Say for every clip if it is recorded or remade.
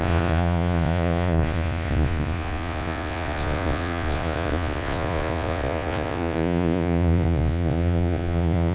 remade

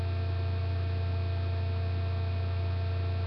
recorded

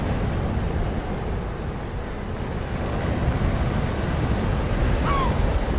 recorded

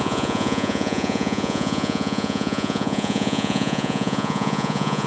remade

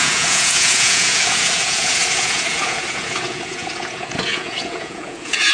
remade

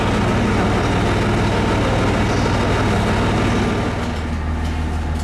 recorded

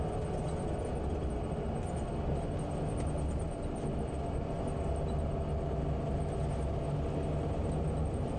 recorded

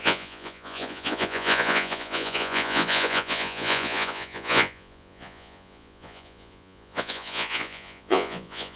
remade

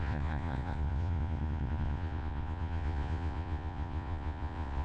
remade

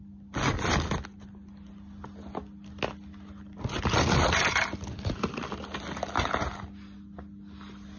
recorded